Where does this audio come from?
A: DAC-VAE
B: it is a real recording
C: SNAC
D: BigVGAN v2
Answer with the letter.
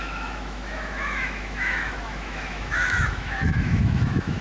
A